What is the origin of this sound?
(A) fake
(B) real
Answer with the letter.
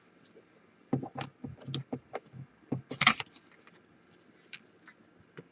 B